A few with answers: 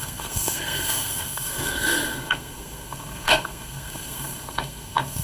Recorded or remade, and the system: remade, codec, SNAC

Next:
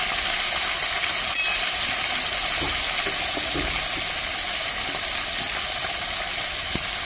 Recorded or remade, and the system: recorded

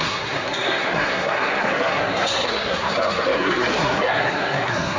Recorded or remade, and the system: remade, codec, SNAC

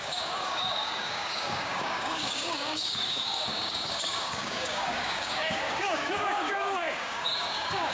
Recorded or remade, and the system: remade, codec, DAC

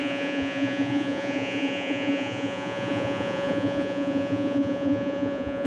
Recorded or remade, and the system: remade, vocoder, Vocos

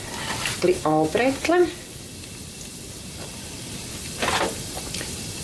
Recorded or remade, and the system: recorded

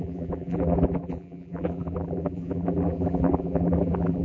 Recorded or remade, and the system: remade, vocoder, BigVGAN v2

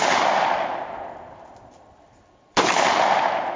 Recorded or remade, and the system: recorded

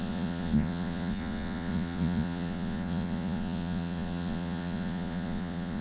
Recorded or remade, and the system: remade, vocoder, Vocos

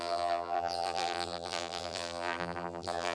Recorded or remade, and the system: remade, vocoder, BigVGAN v2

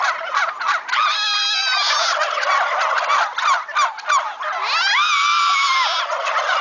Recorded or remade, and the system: recorded